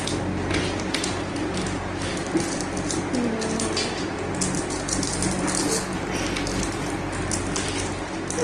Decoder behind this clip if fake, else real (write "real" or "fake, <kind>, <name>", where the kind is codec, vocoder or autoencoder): real